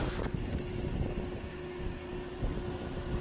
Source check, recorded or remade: recorded